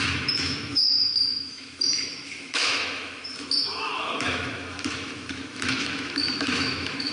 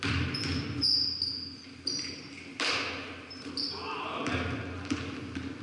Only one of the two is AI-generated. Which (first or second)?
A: first